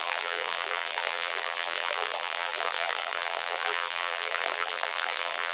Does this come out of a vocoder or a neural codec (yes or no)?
yes